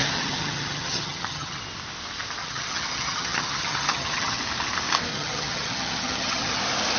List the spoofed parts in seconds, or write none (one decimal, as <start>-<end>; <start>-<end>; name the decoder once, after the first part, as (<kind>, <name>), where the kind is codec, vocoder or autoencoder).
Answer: 0.0-1.6 (vocoder, HiFi-GAN); 2.4-4.4; 5.1-6.6